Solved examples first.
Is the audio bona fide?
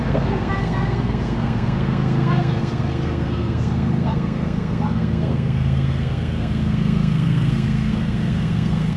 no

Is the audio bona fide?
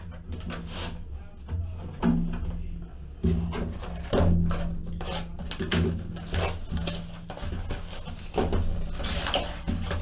yes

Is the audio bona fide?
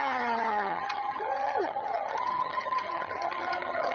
no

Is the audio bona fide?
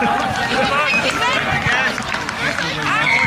yes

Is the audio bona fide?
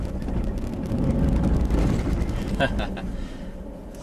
yes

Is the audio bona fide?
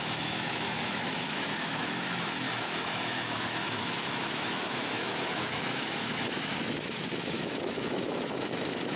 no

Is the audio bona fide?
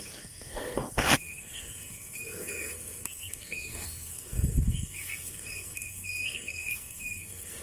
no